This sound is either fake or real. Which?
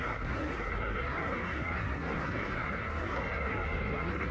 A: fake